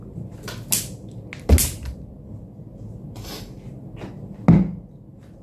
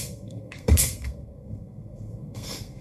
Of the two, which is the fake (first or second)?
second